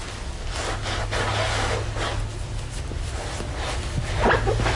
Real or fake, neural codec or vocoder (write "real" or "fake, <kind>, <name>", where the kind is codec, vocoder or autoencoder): real